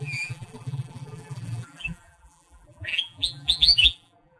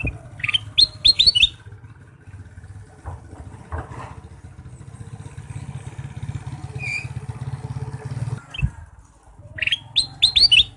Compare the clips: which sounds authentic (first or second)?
second